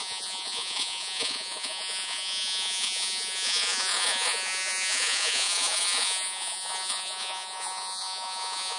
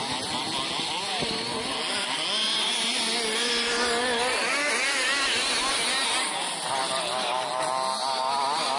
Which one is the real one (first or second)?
second